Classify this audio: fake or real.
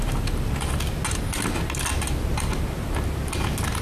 real